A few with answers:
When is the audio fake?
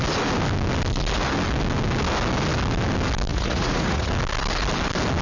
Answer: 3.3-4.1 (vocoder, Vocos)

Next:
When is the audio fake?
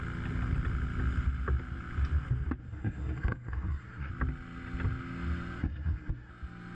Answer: 2.6-4.1 (codec, SNAC); 5.6-6.3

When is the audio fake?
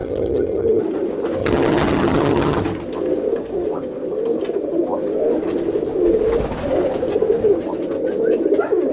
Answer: 0.0-0.8 (vocoder, HiFi-GAN); 1.4-2.6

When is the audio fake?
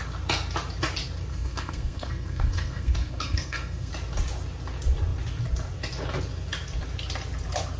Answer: 1.3-3.9 (codec, SNAC)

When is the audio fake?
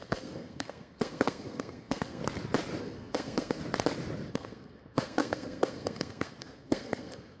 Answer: 0.0-2.2 (codec, SNAC); 2.8-3.6; 4.3-7.4